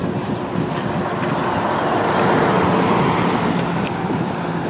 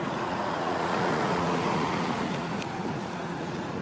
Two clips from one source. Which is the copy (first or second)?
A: second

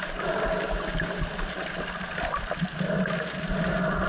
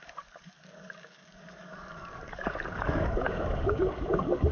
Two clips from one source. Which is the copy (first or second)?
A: second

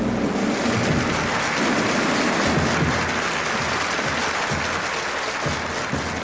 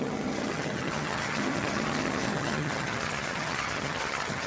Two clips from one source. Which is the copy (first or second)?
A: second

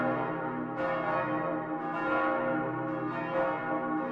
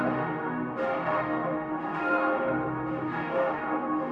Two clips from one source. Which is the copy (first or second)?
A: second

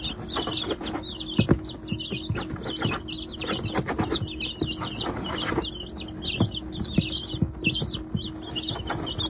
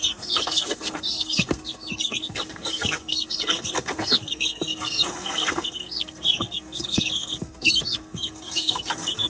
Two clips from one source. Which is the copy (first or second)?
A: second